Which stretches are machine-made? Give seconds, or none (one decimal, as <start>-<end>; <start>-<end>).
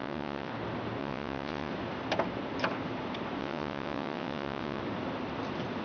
0.0-0.5; 1.0-1.7; 3.4-4.8